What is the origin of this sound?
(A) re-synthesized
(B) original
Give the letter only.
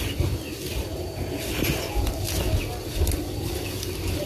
B